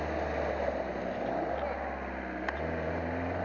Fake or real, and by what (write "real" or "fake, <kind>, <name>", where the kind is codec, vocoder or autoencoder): real